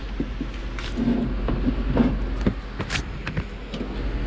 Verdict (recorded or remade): recorded